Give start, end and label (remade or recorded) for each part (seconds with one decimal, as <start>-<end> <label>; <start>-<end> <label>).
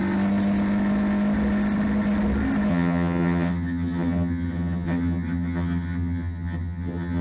0.0-2.7 recorded; 2.7-7.2 remade